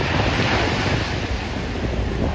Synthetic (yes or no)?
no